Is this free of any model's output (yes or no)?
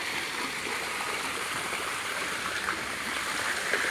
yes